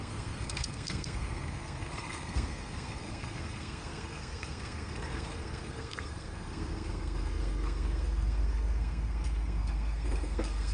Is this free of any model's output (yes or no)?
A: no